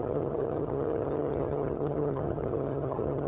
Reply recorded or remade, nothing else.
remade